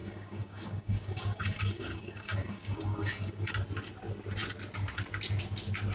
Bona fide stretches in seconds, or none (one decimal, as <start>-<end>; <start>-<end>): 3.5-5.9